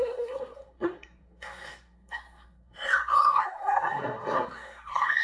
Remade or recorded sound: remade